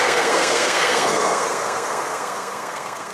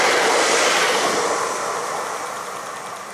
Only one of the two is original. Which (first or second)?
second